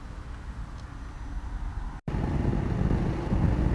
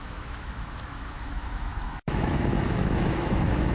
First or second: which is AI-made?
second